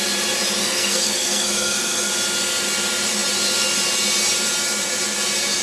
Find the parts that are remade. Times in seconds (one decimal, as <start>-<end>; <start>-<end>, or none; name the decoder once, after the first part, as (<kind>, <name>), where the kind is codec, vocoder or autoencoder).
0.6-2.1 (codec, SNAC)